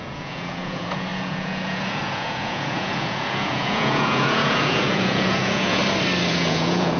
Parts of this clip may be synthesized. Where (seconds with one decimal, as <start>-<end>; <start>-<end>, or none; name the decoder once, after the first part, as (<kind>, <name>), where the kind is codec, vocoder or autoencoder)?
0.0-5.8 (vocoder, Vocos); 6.3-7.0